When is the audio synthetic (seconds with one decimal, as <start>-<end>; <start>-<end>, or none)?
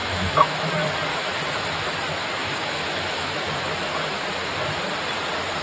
0.0-0.7; 1.1-1.9; 2.4-3.5